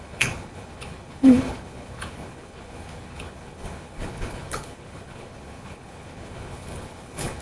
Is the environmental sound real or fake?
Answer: fake